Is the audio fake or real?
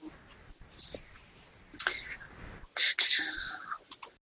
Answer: real